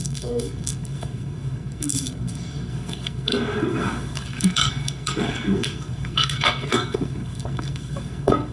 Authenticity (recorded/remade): remade